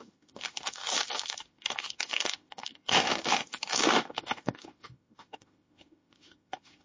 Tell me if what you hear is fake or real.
fake